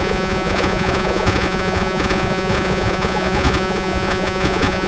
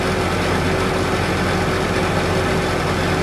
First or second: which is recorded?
second